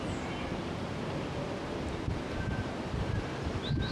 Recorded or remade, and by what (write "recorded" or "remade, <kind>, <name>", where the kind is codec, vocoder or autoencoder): recorded